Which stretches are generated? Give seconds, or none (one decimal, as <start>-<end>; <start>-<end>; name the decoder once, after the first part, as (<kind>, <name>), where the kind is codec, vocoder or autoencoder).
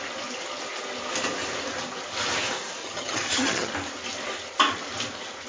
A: 2.8-3.7 (vocoder, HiFi-GAN)